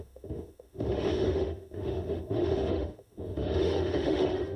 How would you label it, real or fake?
fake